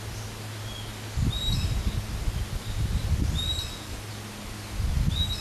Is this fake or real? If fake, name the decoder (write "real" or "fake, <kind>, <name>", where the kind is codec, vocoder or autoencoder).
real